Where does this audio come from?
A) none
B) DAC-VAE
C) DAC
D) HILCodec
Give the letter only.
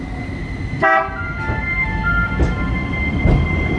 A